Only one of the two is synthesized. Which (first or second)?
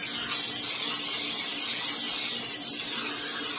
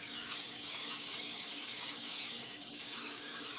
second